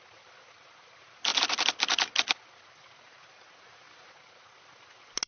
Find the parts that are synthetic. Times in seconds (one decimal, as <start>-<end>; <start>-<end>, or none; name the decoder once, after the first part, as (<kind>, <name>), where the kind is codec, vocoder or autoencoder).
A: none